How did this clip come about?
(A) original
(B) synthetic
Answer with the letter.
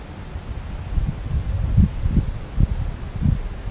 A